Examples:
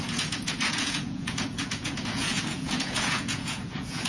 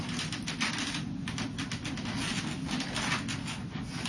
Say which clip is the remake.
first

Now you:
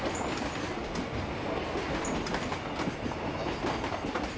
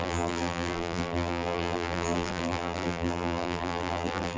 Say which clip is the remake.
second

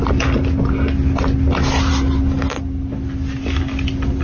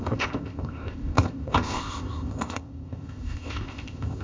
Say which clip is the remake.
second